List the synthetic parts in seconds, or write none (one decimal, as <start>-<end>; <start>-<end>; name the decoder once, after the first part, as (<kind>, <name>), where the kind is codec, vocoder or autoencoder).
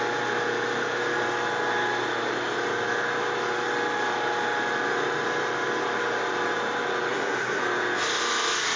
7.1-7.6 (codec, SNAC)